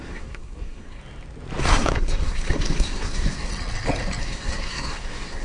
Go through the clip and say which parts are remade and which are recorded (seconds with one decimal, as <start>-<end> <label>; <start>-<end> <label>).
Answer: 0.0-1.0 remade; 1.0-1.6 recorded; 1.6-3.5 remade; 3.5-4.2 recorded; 4.2-5.4 remade